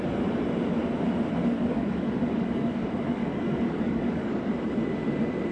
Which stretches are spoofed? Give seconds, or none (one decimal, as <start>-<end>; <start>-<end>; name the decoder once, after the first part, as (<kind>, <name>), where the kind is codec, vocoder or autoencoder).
1.4-4.5 (codec, DAC)